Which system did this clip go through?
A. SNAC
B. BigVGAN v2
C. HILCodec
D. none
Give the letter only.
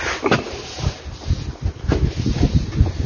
D